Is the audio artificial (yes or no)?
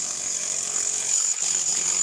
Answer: yes